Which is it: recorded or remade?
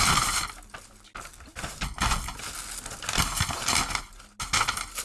recorded